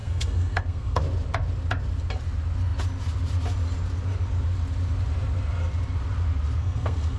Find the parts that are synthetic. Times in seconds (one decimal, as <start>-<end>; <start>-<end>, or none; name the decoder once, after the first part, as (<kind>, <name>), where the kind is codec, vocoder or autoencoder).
0.0-1.0 (codec, SNAC); 6.6-7.2